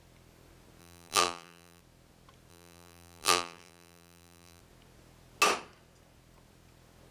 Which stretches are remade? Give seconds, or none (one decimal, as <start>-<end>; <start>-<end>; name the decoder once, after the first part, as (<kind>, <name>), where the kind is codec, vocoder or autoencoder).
0.8-1.8 (vocoder, BigVGAN v2); 2.5-4.6